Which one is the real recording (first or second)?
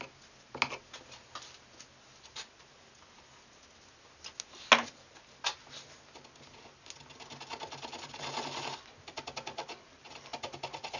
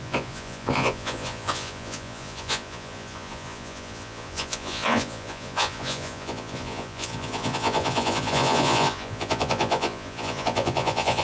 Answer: first